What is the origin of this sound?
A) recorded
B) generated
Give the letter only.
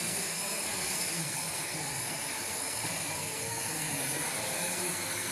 B